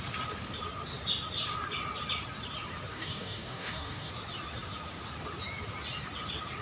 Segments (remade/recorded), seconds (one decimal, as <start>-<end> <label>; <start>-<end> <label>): 0.0-2.9 recorded; 2.9-4.1 remade; 4.1-6.6 recorded